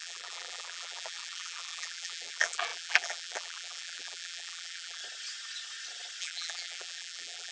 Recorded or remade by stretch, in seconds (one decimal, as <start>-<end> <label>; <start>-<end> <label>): 0.0-5.0 remade; 5.0-6.2 recorded; 6.2-7.5 remade